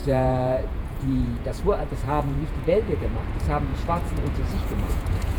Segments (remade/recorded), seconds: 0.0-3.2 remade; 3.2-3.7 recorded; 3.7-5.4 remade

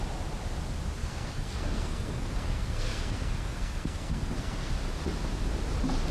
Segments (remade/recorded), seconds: 0.0-1.0 recorded; 1.0-4.7 remade; 4.7-6.1 recorded

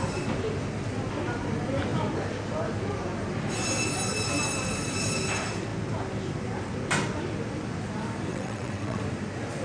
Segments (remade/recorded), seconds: 0.0-8.3 recorded; 8.3-9.0 remade; 9.0-9.6 recorded

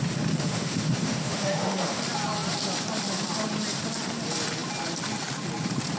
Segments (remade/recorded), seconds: 0.0-0.4 recorded; 0.4-2.0 remade; 2.0-6.0 recorded

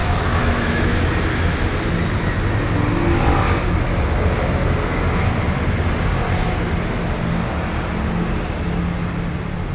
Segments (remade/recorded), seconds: 0.0-1.0 remade; 1.0-9.7 recorded

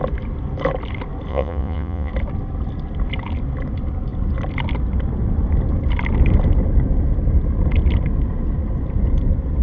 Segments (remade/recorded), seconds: 0.0-1.3 recorded; 1.3-2.1 remade; 2.1-9.6 recorded